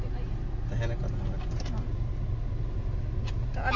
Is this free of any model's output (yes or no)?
yes